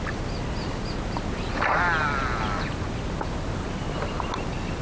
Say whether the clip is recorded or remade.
recorded